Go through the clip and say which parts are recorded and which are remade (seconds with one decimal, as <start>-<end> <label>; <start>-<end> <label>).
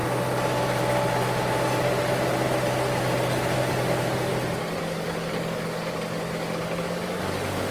0.0-3.7 recorded; 3.7-4.3 remade; 4.3-4.8 recorded; 4.8-7.7 remade